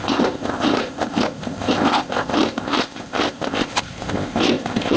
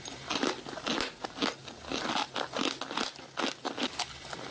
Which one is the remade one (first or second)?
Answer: first